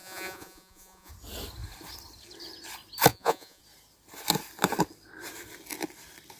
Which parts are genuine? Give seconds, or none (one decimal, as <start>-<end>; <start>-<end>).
1.1-3.1; 3.6-6.4